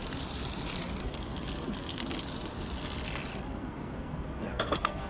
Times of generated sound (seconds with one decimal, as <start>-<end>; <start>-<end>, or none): 1.0-2.2; 3.3-5.1